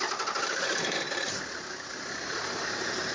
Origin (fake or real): fake